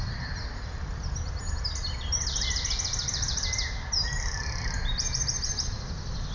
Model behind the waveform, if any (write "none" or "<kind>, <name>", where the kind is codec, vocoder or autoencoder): none